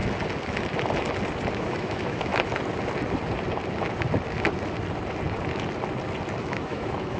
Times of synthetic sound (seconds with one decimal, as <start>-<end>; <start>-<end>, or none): 1.5-2.3; 6.4-7.2